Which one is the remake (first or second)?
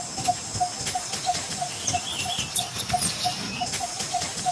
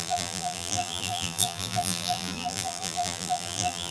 second